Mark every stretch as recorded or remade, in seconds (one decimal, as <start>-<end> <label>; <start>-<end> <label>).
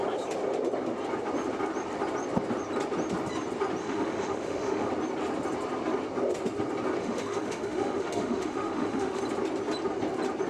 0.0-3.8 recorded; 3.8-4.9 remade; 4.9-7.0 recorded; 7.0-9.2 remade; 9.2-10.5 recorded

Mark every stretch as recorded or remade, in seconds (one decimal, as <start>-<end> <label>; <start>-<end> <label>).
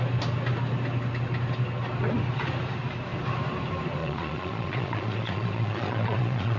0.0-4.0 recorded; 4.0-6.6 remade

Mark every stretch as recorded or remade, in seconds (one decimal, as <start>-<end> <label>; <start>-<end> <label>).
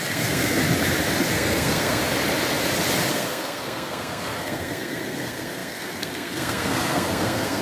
0.0-0.6 remade; 0.6-1.3 recorded; 1.3-2.0 remade; 2.0-3.1 recorded; 3.1-7.6 remade